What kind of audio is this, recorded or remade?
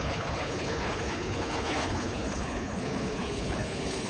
remade